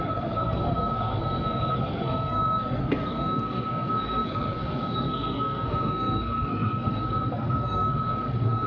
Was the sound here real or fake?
fake